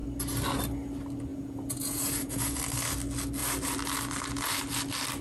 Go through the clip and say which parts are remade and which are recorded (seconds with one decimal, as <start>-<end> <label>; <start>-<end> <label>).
0.0-1.3 recorded; 1.3-2.6 remade; 2.6-5.2 recorded